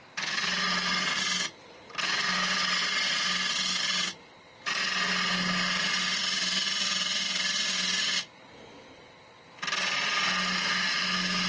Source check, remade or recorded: recorded